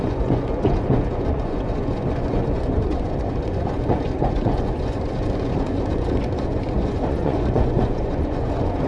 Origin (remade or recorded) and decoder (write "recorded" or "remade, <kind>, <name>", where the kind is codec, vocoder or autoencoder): remade, vocoder, Vocos